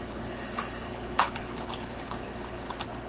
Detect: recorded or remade remade